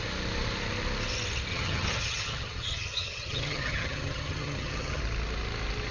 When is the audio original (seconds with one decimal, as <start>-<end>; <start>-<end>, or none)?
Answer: 0.0-1.5; 5.0-5.9